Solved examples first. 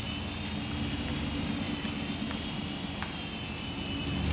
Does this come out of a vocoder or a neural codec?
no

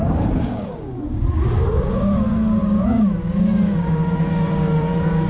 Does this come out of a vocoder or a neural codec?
yes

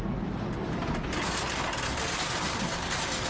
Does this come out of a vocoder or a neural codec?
no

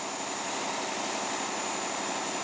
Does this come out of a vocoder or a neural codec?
no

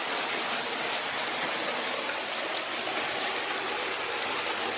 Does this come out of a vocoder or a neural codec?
no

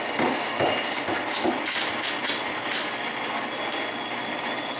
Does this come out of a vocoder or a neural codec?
no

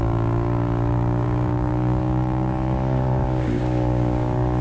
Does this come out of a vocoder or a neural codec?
yes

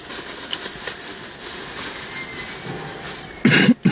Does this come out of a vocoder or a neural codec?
no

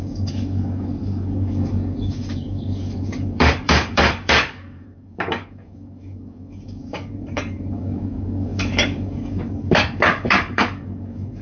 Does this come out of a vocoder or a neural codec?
yes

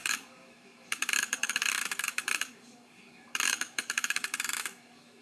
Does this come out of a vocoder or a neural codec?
yes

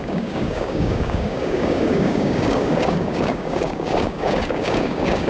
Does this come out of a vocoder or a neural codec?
yes